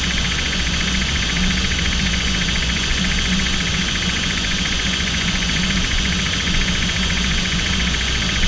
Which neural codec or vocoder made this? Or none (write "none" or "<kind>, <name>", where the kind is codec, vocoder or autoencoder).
vocoder, Vocos